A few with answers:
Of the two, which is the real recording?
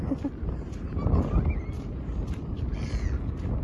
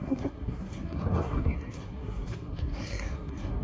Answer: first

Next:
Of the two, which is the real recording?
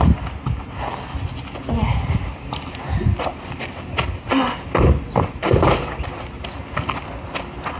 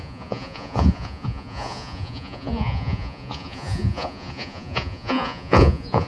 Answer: first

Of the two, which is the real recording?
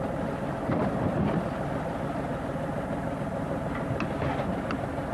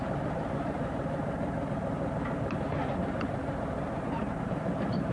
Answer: first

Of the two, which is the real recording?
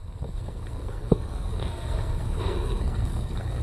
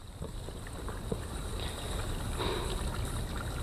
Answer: second